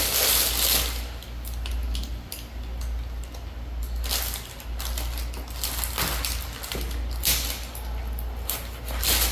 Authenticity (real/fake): real